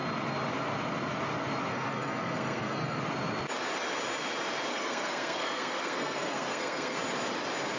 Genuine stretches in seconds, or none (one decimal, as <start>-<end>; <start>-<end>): 0.0-1.7; 3.0-4.7; 7.0-7.8